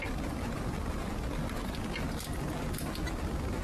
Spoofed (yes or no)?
no